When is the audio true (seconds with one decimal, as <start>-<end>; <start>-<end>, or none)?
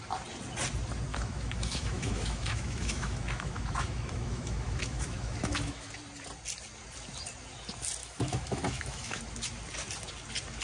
0.0-1.1; 5.9-8.0; 9.2-10.6